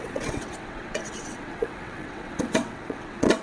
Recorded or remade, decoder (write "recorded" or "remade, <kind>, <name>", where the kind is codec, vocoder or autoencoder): remade, vocoder, WaveNeXt